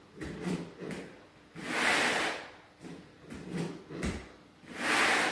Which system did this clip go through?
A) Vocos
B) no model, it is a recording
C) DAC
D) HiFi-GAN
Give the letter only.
B